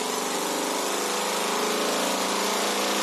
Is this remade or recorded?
recorded